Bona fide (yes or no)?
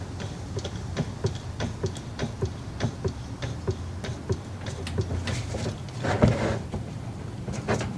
yes